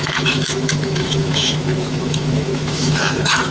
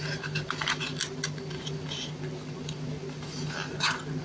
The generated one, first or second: first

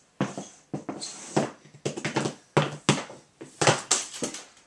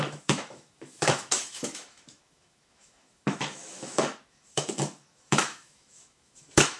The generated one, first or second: second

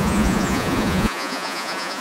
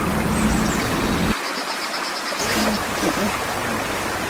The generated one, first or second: first